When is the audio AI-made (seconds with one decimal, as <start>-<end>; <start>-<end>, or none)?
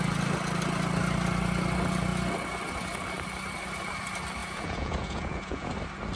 4.4-5.7